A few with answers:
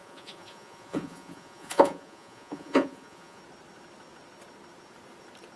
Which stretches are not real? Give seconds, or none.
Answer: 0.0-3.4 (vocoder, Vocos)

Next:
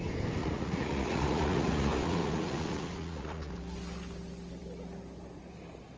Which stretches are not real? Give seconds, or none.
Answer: 0.4-3.5 (vocoder, Vocos)

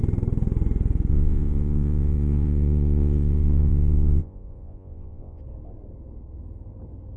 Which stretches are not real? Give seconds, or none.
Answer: 1.1-5.4 (vocoder, Vocos)

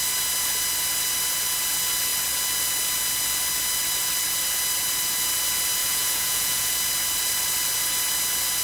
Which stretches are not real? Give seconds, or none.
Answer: 5.8-6.7 (vocoder, Vocos)

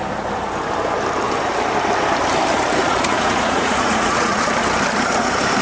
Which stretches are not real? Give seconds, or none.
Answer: 2.8-4.4 (vocoder, Vocos)

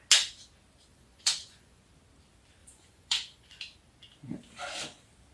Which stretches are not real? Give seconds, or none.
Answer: 0.9-1.8 (vocoder, Vocos); 2.6-3.6

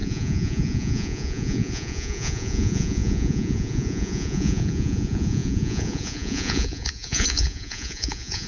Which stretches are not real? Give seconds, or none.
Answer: 0.0-8.5 (vocoder, Vocos)